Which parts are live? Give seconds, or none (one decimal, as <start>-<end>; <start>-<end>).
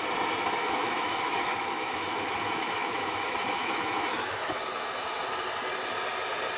0.0-0.6; 4.6-6.6